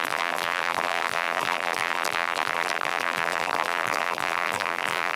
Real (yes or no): no